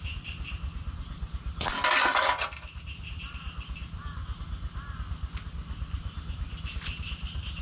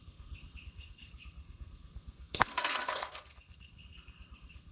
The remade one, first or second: second